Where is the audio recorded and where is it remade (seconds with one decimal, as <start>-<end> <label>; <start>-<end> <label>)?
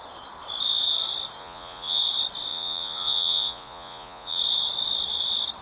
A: 0.0-1.4 recorded; 1.4-2.0 remade; 2.0-2.5 recorded; 2.5-4.4 remade; 4.4-5.6 recorded